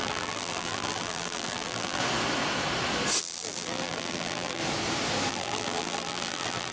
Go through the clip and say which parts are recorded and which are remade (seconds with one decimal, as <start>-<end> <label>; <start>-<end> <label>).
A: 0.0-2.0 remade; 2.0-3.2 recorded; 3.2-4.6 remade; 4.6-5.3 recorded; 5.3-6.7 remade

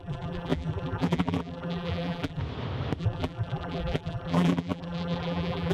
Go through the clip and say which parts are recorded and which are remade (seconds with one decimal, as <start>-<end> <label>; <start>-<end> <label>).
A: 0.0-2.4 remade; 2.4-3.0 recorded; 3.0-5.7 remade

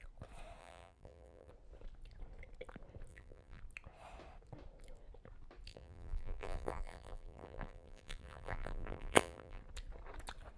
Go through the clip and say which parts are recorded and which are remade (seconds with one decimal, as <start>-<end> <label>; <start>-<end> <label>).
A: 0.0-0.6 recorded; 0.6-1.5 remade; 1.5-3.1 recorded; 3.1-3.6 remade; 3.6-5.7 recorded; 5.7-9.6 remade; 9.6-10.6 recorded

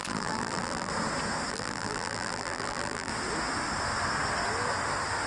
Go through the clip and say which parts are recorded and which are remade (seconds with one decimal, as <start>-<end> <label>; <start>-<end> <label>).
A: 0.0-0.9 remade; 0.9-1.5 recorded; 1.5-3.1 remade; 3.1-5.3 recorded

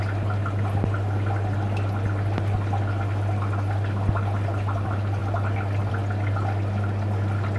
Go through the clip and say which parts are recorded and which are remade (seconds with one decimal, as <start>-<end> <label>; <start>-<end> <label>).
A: 0.0-7.6 recorded